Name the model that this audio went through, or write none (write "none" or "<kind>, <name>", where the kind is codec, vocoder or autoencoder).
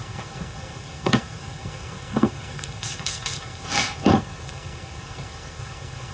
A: codec, SNAC